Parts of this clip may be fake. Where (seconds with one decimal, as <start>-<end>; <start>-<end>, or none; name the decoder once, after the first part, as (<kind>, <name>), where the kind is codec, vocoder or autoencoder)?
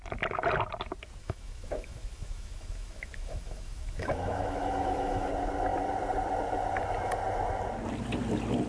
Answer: 1.2-5.3 (autoencoder, DAC-VAE)